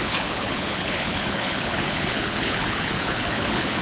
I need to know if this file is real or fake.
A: fake